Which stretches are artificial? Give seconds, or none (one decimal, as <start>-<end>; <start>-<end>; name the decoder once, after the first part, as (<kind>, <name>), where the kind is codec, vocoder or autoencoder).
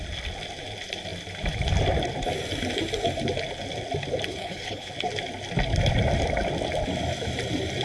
4.3-4.9 (codec, HILCodec)